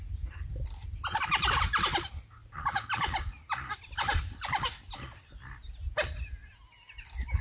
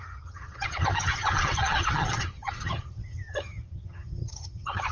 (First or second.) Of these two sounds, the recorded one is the first